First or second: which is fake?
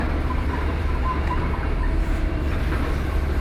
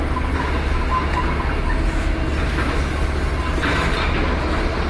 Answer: first